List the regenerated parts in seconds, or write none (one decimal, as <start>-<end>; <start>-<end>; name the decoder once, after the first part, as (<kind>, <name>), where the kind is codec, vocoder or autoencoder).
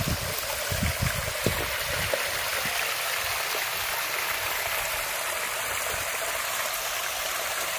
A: none